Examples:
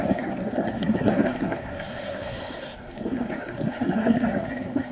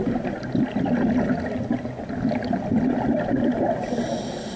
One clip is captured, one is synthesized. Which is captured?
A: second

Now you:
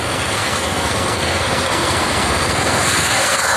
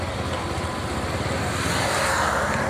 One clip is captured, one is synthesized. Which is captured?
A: second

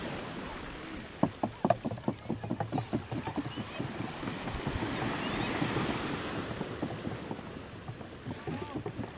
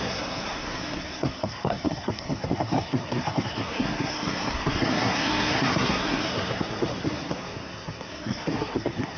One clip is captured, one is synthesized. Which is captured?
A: first